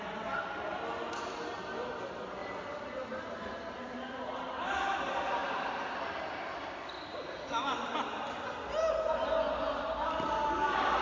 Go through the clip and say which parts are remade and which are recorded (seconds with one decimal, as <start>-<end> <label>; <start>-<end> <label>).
0.0-11.0 recorded